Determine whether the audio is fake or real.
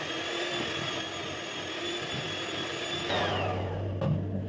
real